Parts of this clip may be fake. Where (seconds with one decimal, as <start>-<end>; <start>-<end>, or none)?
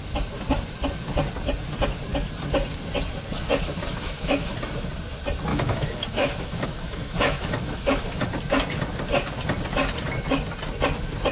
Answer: 3.9-4.5; 5.5-8.3